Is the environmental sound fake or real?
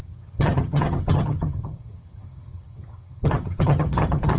fake